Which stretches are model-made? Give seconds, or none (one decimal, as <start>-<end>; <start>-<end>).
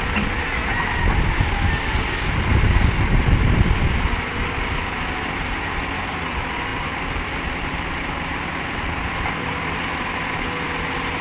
6.7-9.1